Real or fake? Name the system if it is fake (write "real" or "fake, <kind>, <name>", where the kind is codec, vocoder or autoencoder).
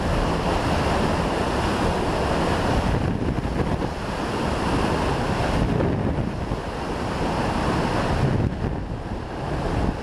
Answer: real